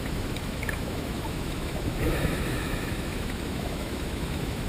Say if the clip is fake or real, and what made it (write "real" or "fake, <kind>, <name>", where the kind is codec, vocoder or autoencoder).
fake, autoencoder, DAC-VAE